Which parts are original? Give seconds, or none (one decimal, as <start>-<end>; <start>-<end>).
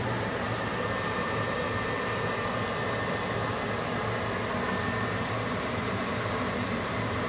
0.7-5.1